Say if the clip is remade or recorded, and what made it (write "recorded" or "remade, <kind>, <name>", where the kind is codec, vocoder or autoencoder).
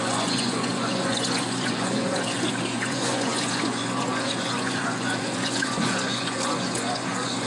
remade, vocoder, Vocos